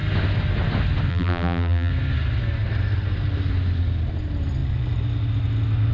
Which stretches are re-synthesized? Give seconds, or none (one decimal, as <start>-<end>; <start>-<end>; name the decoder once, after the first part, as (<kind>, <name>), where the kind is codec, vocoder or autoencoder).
1.1-1.9 (vocoder, BigVGAN v2)